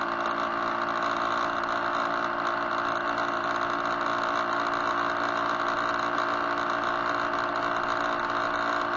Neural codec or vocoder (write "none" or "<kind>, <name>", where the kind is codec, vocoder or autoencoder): none